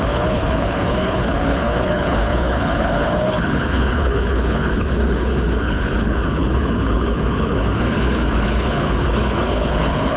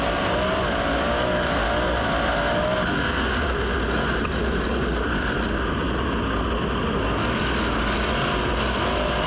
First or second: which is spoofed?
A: first